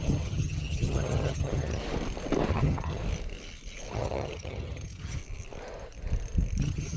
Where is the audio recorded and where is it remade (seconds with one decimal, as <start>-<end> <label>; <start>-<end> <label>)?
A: 0.0-1.8 remade; 1.8-2.5 recorded; 2.5-3.0 remade; 3.0-3.9 recorded; 3.9-5.2 remade; 5.2-6.6 recorded; 6.6-7.0 remade